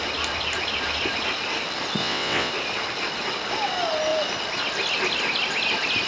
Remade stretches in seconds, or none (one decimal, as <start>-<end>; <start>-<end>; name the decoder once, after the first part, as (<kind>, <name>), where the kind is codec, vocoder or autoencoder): 2.0-2.5 (vocoder, WaveNeXt)